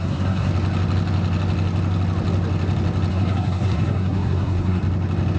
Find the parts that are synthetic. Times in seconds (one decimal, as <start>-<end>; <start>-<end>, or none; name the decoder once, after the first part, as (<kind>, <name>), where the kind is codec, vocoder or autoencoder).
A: 0.0-0.5 (codec, SNAC); 3.1-4.8

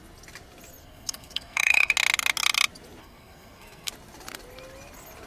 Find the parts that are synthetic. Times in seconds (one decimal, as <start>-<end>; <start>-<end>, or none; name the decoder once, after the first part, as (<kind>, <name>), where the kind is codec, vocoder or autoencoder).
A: 0.8-1.9 (codec, SNAC); 3.0-3.9

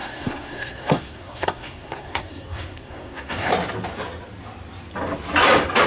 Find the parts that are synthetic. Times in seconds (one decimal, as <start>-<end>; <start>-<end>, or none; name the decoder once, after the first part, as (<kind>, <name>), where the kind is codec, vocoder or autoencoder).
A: 0.0-3.5 (codec, SNAC)

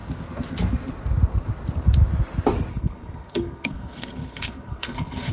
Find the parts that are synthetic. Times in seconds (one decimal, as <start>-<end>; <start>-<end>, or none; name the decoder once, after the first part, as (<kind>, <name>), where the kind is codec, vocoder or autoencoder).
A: 2.7-5.3 (codec, SNAC)

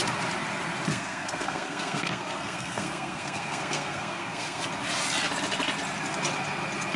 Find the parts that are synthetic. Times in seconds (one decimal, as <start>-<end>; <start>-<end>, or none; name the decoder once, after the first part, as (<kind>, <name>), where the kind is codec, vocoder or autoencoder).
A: 0.9-4.7 (codec, SNAC)